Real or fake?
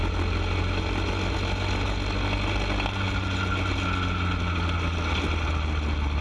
real